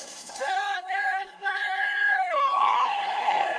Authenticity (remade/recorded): remade